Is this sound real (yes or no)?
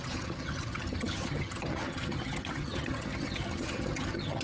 no